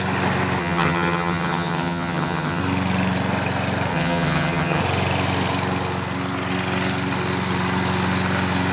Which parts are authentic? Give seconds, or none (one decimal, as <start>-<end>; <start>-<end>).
0.0-0.6; 2.6-3.9; 4.8-8.7